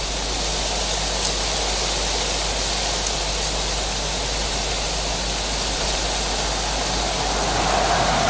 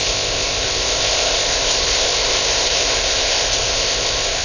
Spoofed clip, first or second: second